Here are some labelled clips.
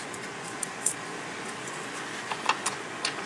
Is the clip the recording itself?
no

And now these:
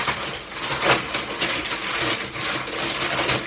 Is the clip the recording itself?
yes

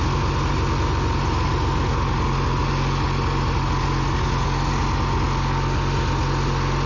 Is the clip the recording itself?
yes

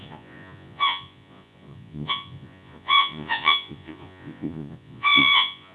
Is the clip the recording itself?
no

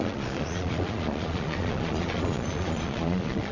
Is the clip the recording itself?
no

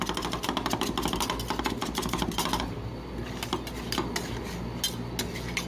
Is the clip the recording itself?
yes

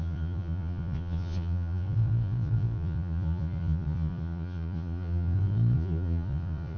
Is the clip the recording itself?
no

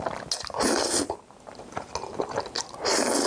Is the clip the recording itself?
yes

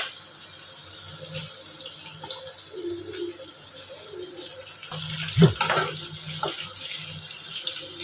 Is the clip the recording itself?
yes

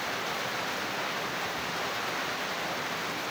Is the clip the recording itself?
yes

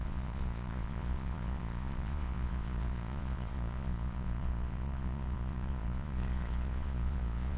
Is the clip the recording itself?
no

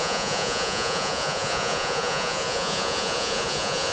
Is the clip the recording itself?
no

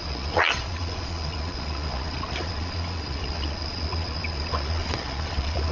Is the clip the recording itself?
no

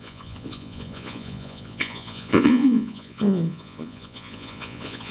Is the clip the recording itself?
no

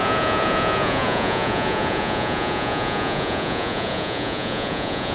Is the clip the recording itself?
no